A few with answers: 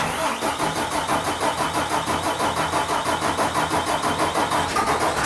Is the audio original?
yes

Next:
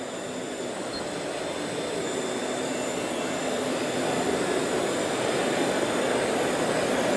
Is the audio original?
yes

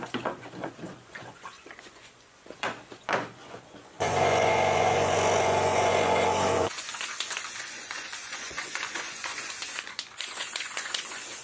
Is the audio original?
no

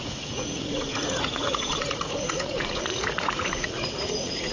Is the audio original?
no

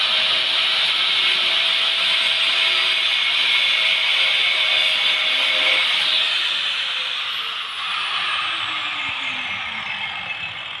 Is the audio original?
yes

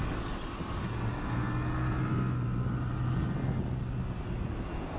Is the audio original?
yes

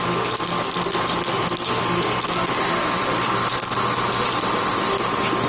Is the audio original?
yes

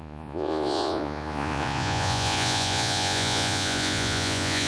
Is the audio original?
no